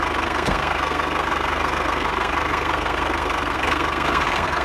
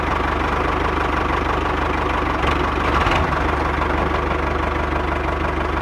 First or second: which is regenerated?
first